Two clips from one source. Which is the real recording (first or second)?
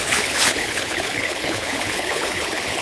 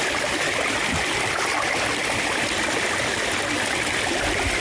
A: second